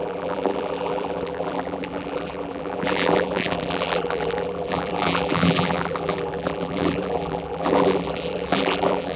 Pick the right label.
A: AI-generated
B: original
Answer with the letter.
A